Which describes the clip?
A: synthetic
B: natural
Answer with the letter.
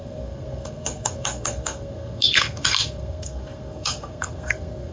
A